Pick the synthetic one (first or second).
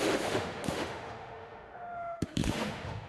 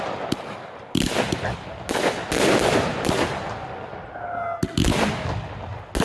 first